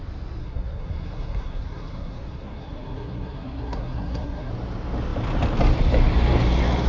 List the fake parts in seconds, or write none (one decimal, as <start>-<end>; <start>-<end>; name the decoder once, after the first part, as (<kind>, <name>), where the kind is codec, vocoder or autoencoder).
0.4-4.5 (codec, SNAC)